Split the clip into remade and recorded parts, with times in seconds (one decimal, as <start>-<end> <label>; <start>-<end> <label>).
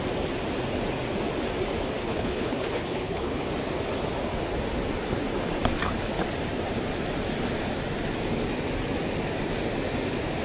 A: 0.0-2.0 recorded; 2.0-3.5 remade; 3.5-10.4 recorded